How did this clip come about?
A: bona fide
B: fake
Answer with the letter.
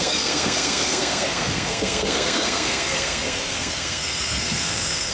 B